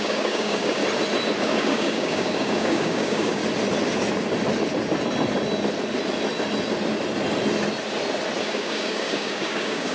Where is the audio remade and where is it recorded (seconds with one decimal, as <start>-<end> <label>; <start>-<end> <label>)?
0.0-0.8 remade; 0.8-1.4 recorded; 1.4-3.4 remade; 3.4-8.4 recorded; 8.4-9.9 remade